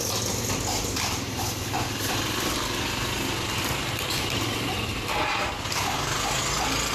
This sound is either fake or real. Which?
real